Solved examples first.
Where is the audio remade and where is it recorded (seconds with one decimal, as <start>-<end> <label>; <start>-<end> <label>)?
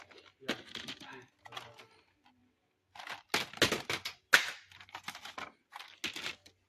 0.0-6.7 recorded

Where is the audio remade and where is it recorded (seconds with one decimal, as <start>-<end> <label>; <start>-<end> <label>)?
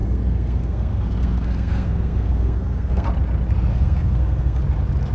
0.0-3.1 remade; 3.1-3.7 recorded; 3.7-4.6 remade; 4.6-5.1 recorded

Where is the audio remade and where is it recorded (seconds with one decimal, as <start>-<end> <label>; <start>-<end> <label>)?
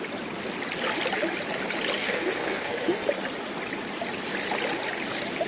0.0-2.0 recorded; 2.0-3.0 remade; 3.0-5.5 recorded